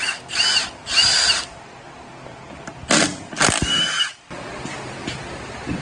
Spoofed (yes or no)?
yes